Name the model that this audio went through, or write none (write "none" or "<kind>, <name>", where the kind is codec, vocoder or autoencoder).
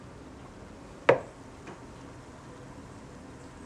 none